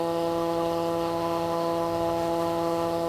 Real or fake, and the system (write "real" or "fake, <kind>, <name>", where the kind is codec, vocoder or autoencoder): fake, autoencoder, DAC-VAE